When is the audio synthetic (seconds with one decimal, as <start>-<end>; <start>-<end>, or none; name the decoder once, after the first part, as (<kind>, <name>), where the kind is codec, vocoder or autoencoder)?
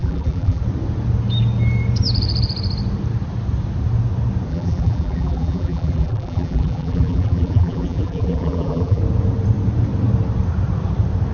0.0-0.6 (vocoder, BigVGAN v2); 4.5-9.0